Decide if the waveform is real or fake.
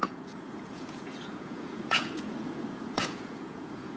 fake